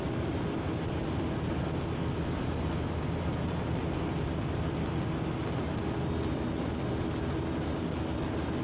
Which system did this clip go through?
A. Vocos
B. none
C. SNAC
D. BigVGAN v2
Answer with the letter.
B